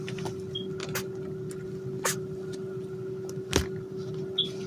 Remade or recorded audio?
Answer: recorded